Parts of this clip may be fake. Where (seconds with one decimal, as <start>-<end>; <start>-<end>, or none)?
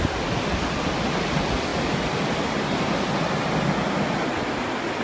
none